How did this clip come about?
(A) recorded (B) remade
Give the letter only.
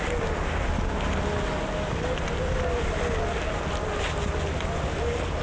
A